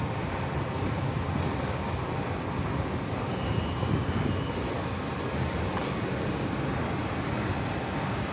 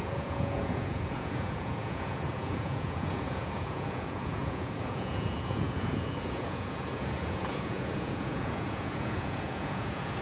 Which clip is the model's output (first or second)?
second